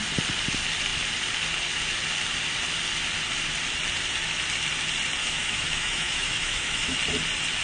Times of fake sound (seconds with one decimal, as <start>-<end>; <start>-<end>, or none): 5.2-7.0